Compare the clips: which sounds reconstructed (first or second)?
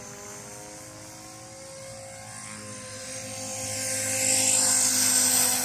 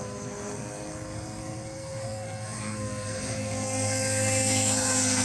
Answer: second